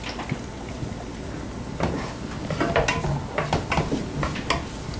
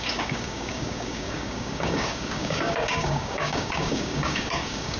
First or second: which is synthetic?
second